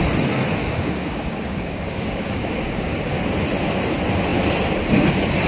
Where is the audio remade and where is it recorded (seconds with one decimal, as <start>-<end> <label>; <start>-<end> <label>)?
0.0-0.6 recorded; 0.6-3.2 remade; 3.2-5.5 recorded